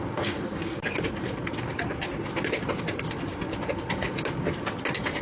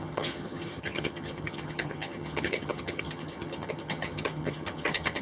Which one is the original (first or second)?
first